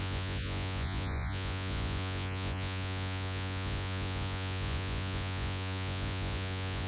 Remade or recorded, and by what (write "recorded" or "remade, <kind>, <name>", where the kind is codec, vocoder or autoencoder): remade, vocoder, Vocos